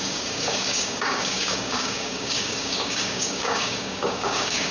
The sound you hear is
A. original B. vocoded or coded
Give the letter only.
B